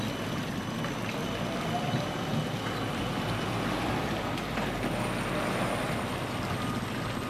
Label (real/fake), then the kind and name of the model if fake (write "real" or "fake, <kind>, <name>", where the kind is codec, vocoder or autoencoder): real